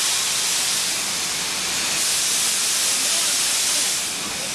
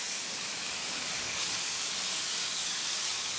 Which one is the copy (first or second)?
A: second